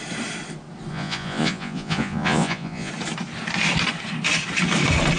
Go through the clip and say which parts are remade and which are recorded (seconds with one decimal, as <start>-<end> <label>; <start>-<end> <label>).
0.0-0.9 recorded; 0.9-2.9 remade; 2.9-5.2 recorded